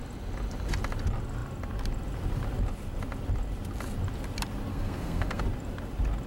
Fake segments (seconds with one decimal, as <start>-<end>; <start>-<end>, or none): 4.7-5.4